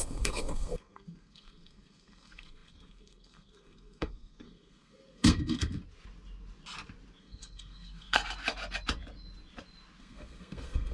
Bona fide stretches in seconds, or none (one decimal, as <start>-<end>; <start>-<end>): 5.8-7.2; 8.2-10.0